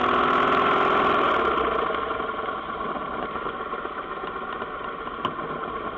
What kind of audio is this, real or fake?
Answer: real